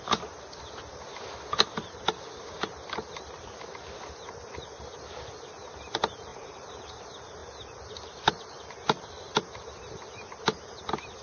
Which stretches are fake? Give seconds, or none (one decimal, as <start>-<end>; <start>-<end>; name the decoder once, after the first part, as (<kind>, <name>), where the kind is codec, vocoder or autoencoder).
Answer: 6.3-7.0 (vocoder, Vocos)